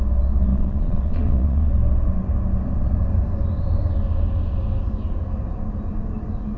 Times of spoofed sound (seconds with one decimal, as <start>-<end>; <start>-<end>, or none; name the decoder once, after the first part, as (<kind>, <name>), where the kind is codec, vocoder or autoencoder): 0.5-1.7 (vocoder, Vocos)

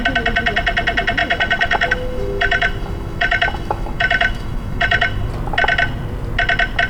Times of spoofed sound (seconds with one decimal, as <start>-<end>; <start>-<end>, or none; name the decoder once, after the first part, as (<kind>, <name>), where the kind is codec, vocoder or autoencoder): 1.2-5.3 (autoencoder, DAC-VAE)

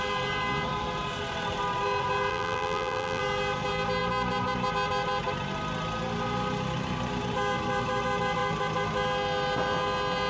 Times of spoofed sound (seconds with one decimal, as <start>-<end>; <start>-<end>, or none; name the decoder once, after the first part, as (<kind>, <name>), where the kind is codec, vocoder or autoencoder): 2.3-3.2 (vocoder, BigVGAN v2)

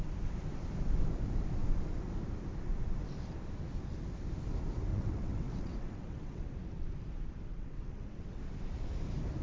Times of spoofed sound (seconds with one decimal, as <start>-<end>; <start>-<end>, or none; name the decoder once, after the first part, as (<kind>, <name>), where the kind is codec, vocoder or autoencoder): 4.9-6.4 (vocoder, WaveNeXt); 7.5-8.4

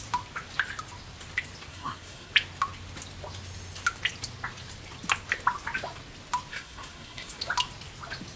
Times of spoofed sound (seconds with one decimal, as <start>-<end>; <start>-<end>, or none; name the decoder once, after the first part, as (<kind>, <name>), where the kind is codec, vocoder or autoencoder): 1.7-2.3 (codec, SNAC); 6.5-7.4

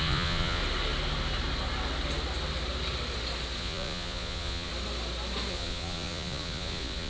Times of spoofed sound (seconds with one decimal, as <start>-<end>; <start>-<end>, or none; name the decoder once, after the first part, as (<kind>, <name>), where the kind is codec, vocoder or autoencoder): 0.0-0.6 (vocoder, Vocos); 3.6-4.7; 5.5-7.1